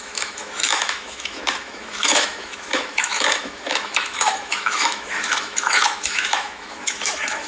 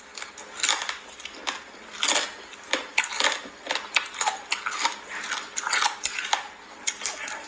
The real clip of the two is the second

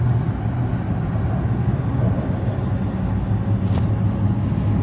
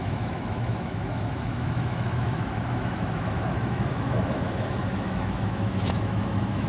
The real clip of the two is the first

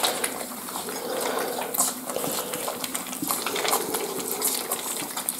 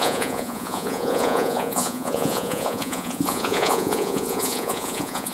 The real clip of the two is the first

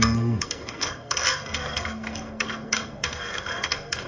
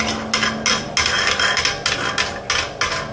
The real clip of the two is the second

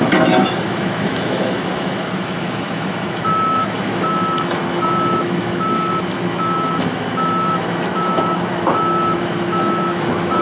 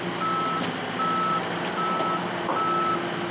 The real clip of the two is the second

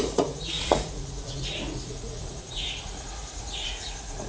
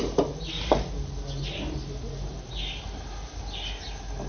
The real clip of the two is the second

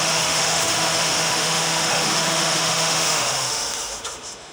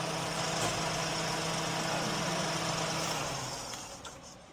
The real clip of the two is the second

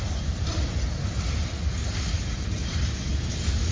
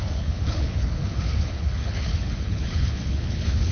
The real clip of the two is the first